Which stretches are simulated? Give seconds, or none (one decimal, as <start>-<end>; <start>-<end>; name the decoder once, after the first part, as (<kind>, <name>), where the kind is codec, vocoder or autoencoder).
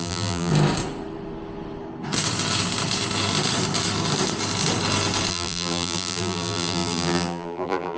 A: 0.0-0.5 (vocoder, BigVGAN v2); 5.3-8.0